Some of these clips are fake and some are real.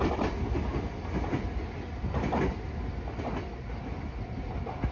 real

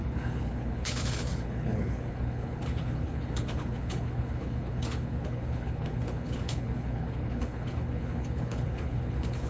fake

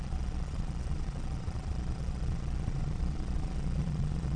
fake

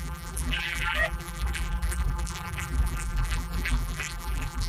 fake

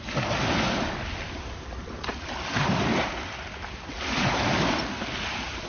real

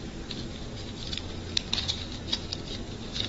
real